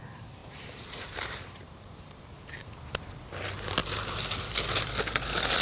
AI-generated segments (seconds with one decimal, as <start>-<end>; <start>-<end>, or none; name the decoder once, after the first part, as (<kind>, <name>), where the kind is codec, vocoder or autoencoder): 0.4-2.7 (vocoder, BigVGAN v2)